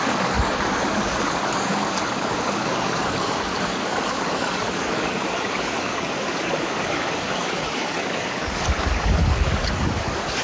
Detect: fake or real fake